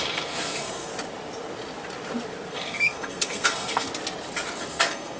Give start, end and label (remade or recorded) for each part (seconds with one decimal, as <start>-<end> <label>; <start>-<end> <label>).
0.0-0.9 remade; 0.9-2.5 recorded; 2.5-3.9 remade; 3.9-4.6 recorded; 4.6-5.2 remade